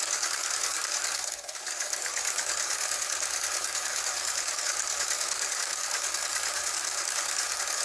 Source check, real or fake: fake